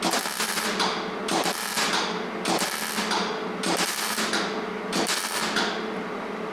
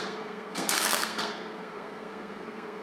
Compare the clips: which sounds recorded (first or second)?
first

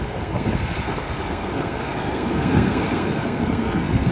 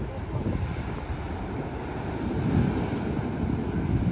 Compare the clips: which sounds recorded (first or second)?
second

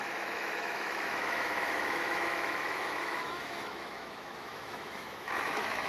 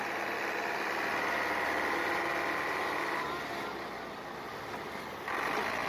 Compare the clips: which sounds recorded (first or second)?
second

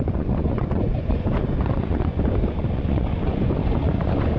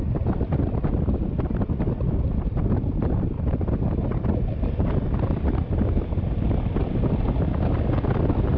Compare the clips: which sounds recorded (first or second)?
second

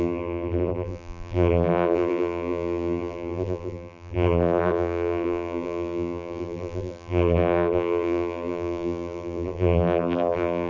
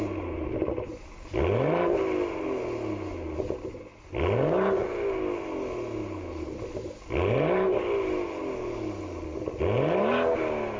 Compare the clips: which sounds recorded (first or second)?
second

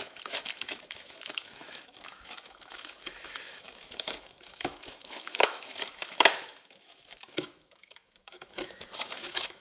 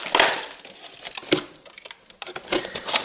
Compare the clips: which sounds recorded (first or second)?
second